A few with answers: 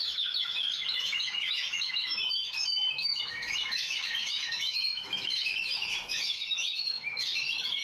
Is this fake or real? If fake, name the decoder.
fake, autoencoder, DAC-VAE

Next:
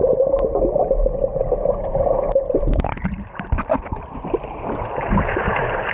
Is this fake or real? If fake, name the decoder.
real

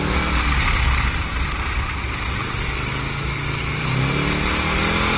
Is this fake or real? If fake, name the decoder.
real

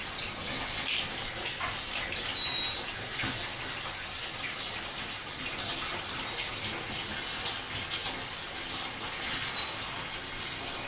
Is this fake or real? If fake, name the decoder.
real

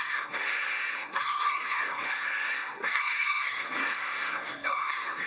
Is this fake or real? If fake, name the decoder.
fake, codec, SNAC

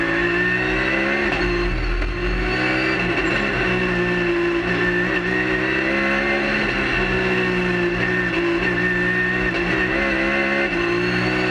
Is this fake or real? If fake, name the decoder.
real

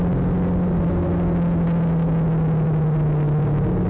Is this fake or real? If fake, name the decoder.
real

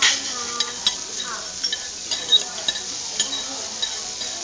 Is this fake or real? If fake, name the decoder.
real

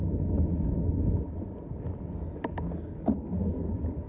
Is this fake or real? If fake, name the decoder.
real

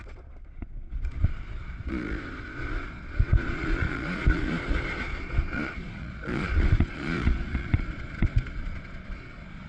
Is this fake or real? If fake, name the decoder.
fake, vocoder, Vocos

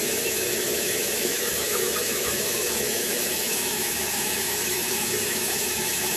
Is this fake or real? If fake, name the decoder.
fake, autoencoder, DAC-VAE